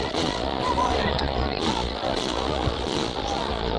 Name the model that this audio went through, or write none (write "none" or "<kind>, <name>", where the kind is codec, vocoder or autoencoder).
vocoder, Vocos